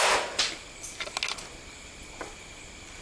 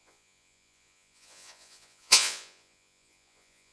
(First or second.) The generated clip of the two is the second